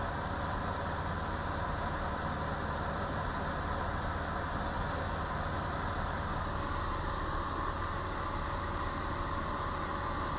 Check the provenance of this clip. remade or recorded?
recorded